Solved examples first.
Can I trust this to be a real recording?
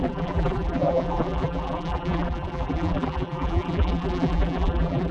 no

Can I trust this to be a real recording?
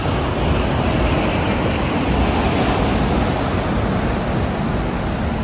yes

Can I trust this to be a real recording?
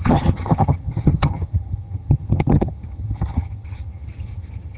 no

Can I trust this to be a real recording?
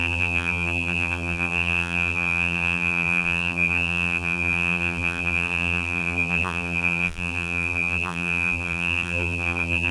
no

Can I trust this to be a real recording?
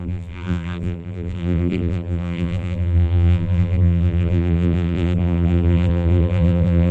no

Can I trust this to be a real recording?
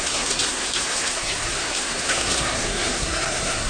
no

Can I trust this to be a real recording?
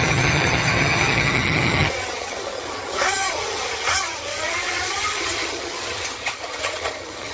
no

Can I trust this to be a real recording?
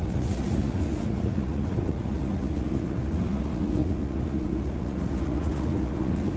no